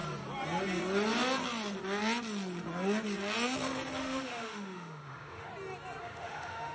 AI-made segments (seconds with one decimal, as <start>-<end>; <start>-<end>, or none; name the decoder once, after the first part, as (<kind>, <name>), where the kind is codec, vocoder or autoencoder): 4.0-5.5 (autoencoder, DAC-VAE); 6.0-6.7